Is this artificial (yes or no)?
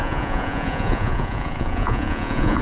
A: yes